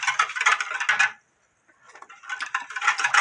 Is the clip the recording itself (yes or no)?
yes